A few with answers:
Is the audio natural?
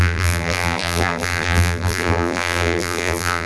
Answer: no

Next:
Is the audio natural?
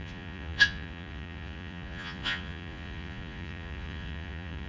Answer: no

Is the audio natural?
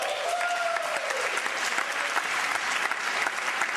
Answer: no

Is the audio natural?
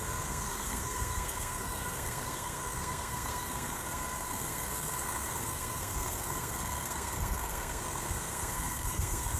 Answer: no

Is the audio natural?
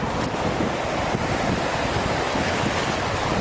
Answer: yes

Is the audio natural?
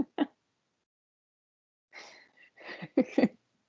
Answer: yes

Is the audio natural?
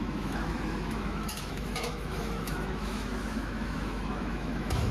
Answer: no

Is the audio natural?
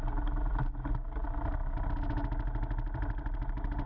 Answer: yes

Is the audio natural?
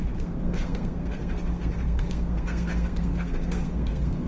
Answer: no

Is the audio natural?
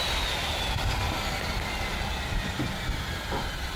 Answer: yes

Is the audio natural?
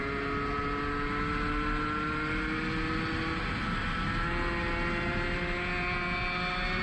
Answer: yes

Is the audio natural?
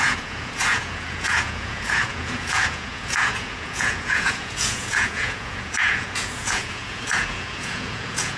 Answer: no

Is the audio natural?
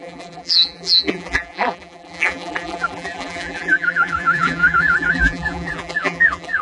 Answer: no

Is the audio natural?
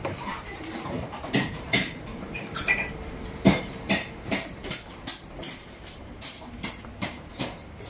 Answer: no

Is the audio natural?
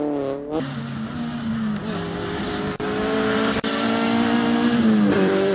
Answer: yes